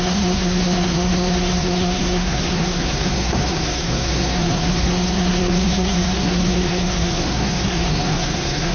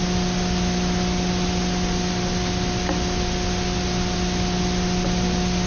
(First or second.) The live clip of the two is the second